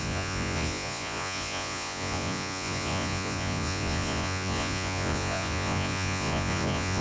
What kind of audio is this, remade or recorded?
remade